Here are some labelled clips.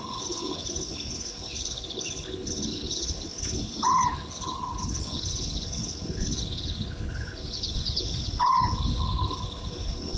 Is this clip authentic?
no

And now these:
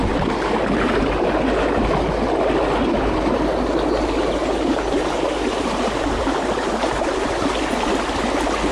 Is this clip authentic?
yes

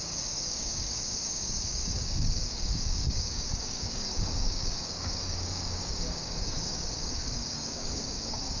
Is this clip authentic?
no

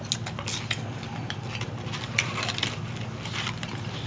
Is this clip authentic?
yes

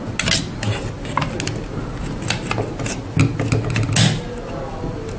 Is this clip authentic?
yes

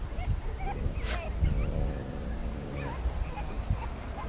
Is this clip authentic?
yes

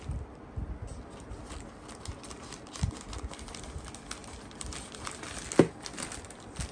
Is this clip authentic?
yes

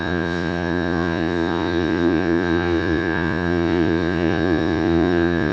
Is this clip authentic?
no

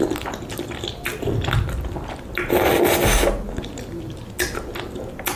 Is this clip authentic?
yes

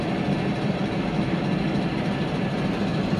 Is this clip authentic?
no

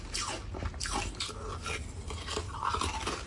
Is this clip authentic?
yes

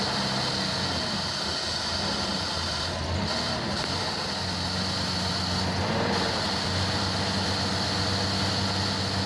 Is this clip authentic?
yes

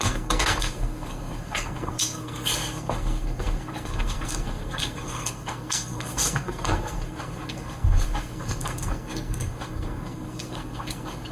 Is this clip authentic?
no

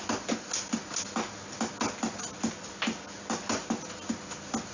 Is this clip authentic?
yes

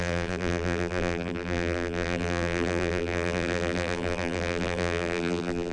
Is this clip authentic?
no